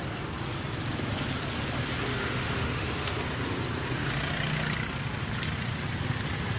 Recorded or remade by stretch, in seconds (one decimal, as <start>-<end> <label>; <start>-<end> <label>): 0.0-2.1 recorded; 2.1-3.1 remade; 3.1-6.6 recorded